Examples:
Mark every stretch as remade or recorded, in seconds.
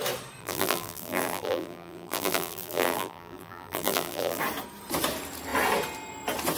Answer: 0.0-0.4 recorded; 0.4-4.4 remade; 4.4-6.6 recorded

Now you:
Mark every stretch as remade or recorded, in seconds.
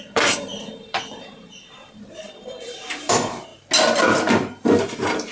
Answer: 0.0-3.5 remade; 3.5-4.8 recorded; 4.8-5.3 remade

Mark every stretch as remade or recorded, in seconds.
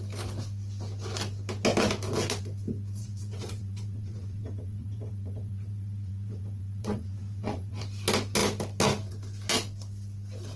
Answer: 0.0-3.0 recorded; 3.0-7.8 remade; 7.8-10.6 recorded